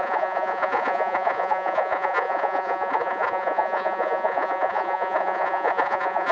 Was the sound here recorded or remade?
remade